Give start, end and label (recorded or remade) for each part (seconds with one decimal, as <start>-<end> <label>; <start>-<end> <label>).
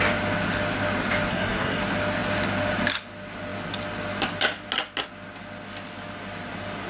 0.0-1.3 recorded; 1.3-1.8 remade; 1.8-6.9 recorded